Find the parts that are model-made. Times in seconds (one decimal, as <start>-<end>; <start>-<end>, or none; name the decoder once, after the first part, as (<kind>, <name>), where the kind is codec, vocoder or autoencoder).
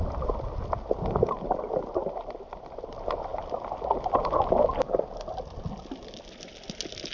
none